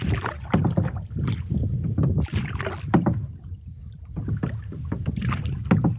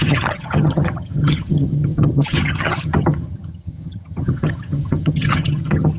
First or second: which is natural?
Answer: first